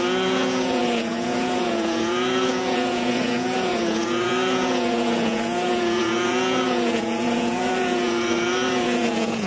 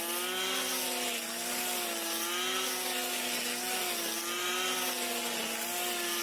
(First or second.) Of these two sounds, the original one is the second